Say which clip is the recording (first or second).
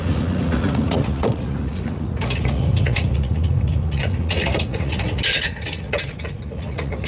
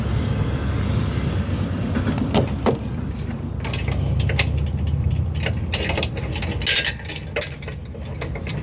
second